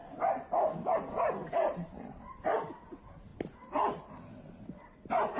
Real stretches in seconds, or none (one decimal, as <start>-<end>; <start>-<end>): 0.0-1.4; 2.0-5.4